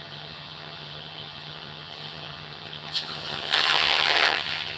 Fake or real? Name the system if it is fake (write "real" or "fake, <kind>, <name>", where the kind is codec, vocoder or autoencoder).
fake, vocoder, HiFi-GAN